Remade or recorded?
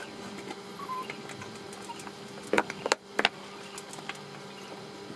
recorded